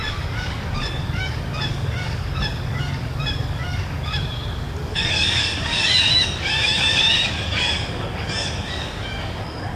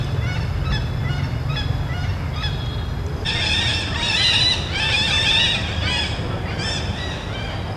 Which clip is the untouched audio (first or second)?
second